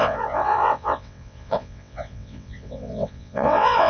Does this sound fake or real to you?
fake